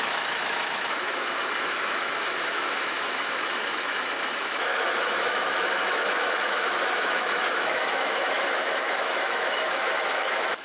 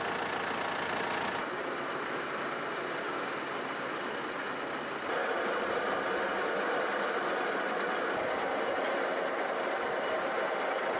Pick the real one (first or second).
second